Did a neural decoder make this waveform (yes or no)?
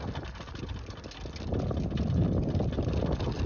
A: no